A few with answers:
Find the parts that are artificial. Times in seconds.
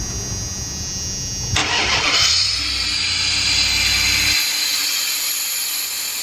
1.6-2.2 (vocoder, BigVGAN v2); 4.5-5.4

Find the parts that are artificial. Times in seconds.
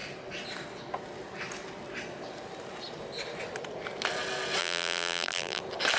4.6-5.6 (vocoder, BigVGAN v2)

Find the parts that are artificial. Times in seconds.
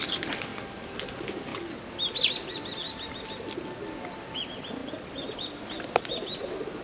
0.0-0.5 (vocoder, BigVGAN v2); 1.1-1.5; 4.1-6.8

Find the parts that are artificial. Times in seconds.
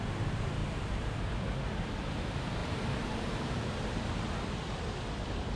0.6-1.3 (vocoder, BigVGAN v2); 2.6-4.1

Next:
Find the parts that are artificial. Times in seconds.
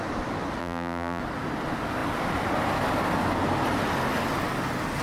0.6-1.2 (vocoder, BigVGAN v2)